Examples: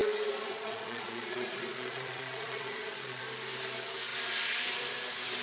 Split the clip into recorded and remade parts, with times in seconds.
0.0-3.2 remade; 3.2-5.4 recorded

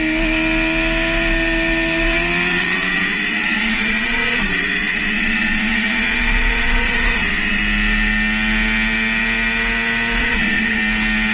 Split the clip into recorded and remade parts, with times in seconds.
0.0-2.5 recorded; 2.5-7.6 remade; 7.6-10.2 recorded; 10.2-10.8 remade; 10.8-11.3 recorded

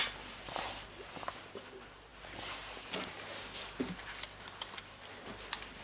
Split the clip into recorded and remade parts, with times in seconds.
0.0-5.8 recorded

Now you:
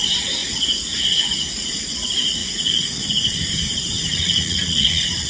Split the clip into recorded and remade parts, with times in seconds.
0.0-2.4 recorded; 2.4-3.0 remade; 3.0-4.1 recorded; 4.1-5.3 remade

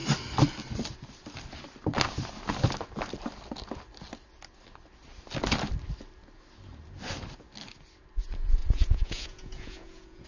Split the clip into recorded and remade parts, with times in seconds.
0.0-8.6 recorded; 8.6-10.3 remade